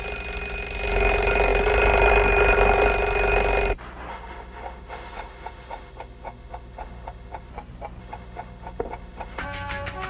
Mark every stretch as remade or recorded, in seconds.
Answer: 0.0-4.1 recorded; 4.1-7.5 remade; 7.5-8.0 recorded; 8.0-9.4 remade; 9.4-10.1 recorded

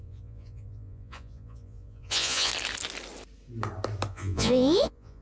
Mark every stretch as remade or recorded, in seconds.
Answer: 0.0-2.5 remade; 2.5-4.1 recorded; 4.1-5.2 remade

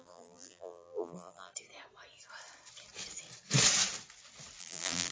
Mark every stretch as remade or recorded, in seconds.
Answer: 0.0-1.5 remade; 1.5-4.6 recorded; 4.6-5.1 remade

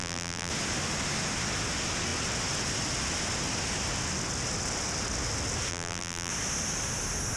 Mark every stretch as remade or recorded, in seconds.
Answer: 0.0-0.5 remade; 0.5-5.7 recorded; 5.7-6.3 remade; 6.3-7.4 recorded